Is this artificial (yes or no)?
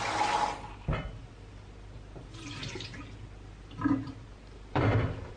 yes